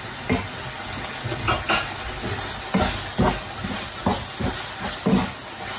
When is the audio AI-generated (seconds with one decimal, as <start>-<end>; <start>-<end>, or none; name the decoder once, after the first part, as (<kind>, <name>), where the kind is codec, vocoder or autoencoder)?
none

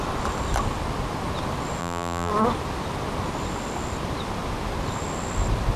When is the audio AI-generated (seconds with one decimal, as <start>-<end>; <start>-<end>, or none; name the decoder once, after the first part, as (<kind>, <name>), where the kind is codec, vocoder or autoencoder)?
1.8-2.3 (vocoder, BigVGAN v2)

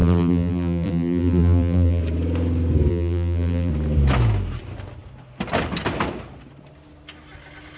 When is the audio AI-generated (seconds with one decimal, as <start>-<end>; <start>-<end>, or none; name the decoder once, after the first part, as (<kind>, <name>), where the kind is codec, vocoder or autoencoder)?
0.0-2.0 (vocoder, BigVGAN v2); 2.9-3.7